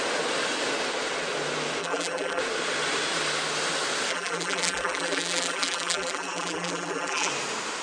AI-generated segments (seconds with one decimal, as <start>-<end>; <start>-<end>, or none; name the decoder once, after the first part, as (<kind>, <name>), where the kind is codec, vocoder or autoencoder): 1.8-2.4 (vocoder, BigVGAN v2); 4.1-7.3